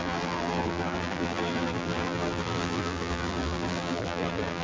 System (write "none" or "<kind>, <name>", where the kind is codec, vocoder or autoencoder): vocoder, BigVGAN v2